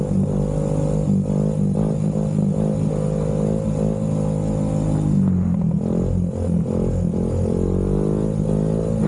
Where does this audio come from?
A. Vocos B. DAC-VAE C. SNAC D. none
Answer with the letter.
D